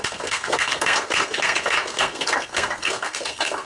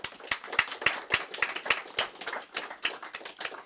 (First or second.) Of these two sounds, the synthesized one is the first